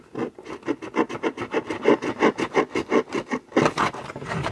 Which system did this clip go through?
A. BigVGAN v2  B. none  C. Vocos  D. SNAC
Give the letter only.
B